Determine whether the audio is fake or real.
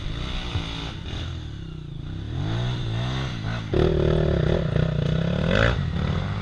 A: real